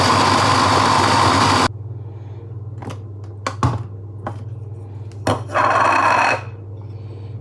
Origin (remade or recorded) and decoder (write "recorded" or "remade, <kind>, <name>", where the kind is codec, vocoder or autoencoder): recorded